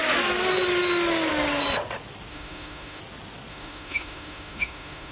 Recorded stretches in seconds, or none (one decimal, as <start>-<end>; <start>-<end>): 0.0-2.3; 3.0-3.5